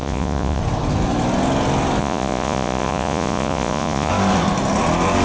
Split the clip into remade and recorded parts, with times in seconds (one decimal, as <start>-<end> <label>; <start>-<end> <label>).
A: 0.0-0.6 remade; 0.6-2.0 recorded; 2.0-4.1 remade; 4.1-5.2 recorded